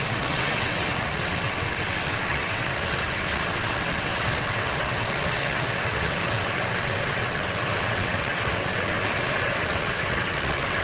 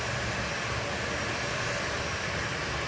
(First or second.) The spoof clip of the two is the first